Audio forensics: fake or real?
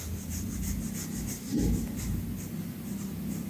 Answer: real